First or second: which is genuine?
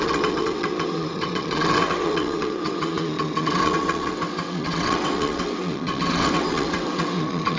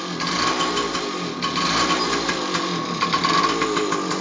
second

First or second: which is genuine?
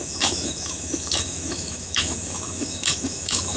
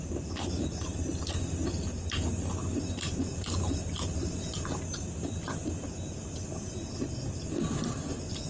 second